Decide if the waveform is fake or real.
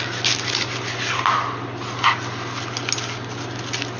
real